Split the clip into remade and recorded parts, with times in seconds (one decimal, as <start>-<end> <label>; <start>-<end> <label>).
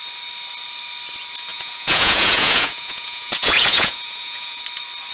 0.0-1.5 recorded; 1.5-4.6 remade; 4.6-5.1 recorded